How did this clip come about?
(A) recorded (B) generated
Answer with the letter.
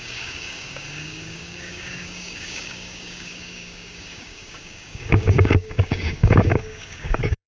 B